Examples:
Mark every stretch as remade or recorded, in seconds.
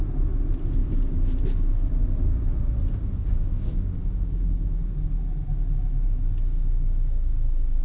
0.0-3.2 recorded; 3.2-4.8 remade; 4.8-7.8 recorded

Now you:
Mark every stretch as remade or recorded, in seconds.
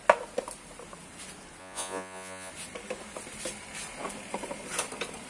0.0-1.6 recorded; 1.6-2.5 remade; 2.5-5.3 recorded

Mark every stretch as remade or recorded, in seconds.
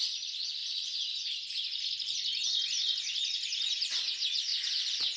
0.0-5.2 recorded